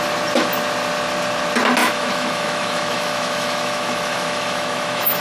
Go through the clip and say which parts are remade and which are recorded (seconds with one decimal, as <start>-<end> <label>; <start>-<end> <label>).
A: 0.0-1.8 recorded; 1.8-5.2 remade